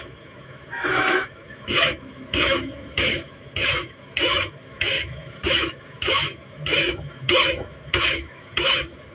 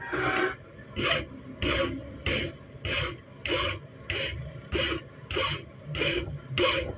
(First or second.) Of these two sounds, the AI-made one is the first